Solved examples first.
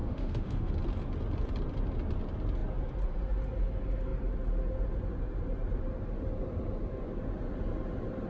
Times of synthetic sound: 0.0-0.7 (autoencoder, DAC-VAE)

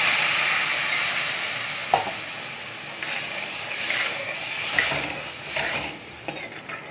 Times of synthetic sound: none

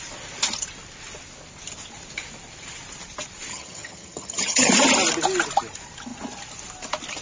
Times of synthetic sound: 3.5-4.7 (vocoder, HiFi-GAN)

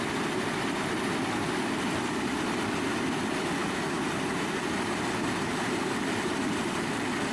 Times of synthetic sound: none

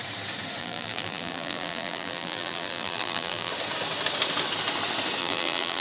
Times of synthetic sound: 0.6-3.5 (vocoder, BigVGAN v2); 5.2-5.8